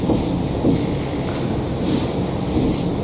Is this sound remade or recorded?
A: recorded